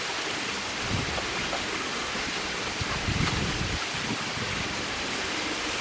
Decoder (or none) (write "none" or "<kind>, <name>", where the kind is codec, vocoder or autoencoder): none